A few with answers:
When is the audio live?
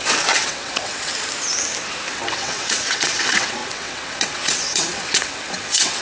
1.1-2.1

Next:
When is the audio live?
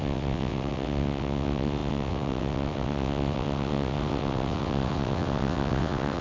none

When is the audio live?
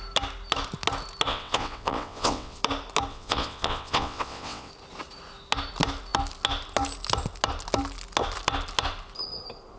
0.0-1.3; 2.6-3.1; 4.7-9.8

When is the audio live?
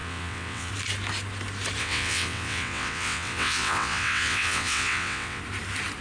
0.7-1.8; 5.4-6.0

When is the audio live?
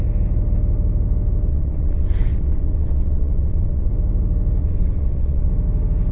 0.0-1.5; 3.9-4.6; 5.5-6.1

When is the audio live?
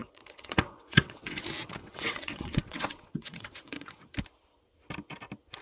1.4-1.8; 4.0-5.6